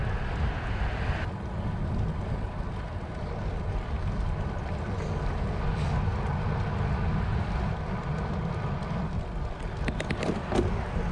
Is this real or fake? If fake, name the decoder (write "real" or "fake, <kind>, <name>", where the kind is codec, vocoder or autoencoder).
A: real